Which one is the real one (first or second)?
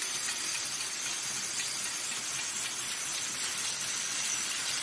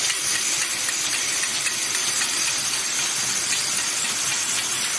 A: first